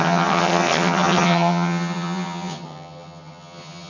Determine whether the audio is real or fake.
fake